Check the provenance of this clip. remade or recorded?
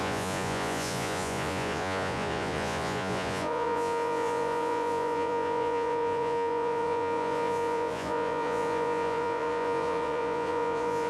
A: remade